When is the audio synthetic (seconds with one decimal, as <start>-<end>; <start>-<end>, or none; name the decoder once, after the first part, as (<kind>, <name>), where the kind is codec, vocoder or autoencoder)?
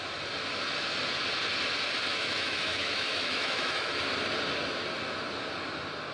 2.1-3.9 (autoencoder, DAC-VAE)